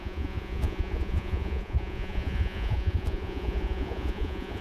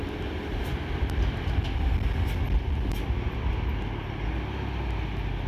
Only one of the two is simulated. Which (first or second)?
first